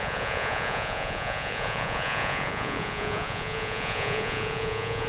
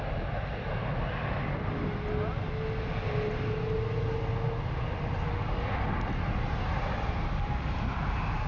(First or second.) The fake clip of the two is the first